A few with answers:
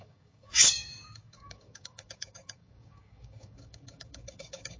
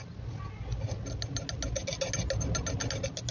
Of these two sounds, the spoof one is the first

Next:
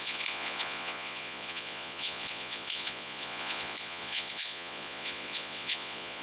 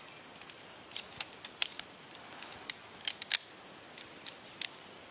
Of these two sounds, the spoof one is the first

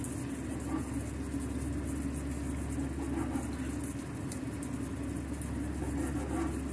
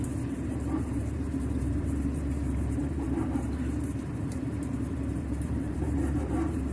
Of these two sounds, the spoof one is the second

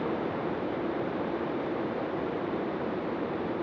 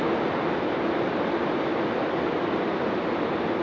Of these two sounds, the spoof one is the first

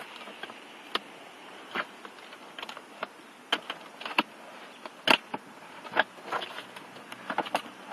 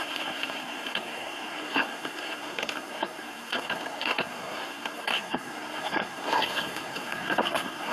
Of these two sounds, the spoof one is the second